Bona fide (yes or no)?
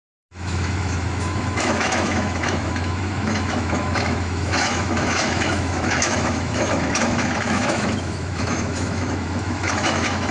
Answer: no